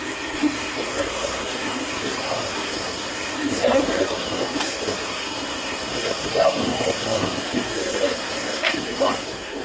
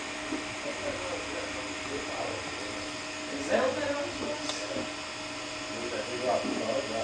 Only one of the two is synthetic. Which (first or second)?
first